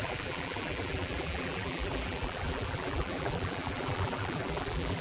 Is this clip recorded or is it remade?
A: remade